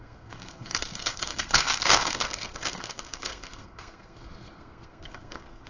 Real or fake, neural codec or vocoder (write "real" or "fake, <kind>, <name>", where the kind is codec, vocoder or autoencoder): fake, codec, SNAC